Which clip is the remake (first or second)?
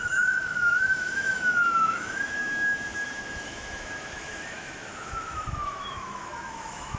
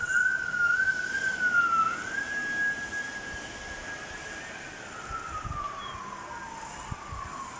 first